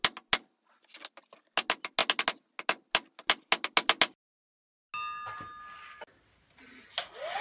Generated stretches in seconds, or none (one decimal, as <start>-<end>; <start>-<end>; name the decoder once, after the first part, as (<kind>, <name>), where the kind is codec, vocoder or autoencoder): none